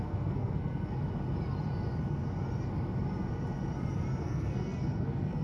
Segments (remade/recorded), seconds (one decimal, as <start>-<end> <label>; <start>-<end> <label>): 0.0-1.0 remade; 1.0-4.2 recorded; 4.2-5.4 remade